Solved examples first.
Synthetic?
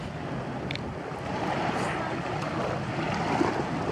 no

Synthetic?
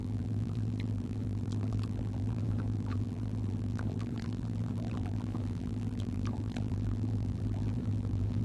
yes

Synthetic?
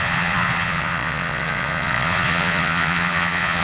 yes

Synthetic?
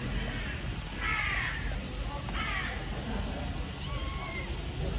no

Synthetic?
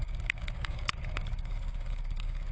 yes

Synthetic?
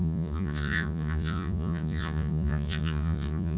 yes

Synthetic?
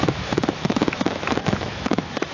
yes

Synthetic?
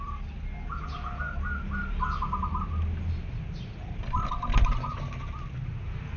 no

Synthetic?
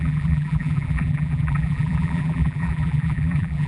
yes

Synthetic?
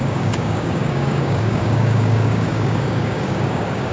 yes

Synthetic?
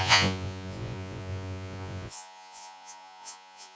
yes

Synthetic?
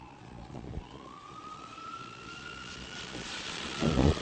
yes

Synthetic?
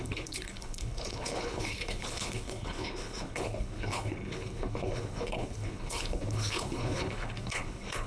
yes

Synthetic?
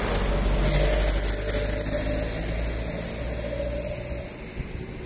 no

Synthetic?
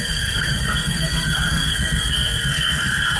yes